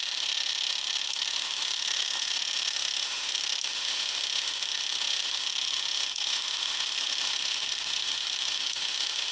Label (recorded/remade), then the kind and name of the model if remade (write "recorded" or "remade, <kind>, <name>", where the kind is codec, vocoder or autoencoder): remade, autoencoder, DAC-VAE